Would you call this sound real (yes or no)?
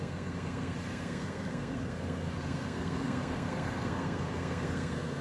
no